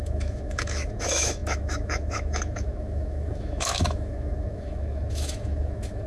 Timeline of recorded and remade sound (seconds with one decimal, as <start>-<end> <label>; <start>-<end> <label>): 0.0-6.1 remade